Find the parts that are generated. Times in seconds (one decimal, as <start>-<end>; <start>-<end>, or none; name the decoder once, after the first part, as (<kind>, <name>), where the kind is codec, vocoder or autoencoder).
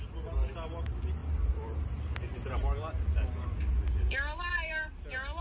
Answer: none